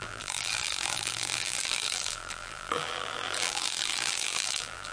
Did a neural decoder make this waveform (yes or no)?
yes